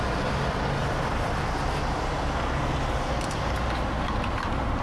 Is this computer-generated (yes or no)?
no